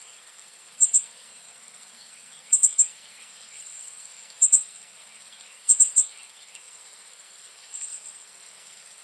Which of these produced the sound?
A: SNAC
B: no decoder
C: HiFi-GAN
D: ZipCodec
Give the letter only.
A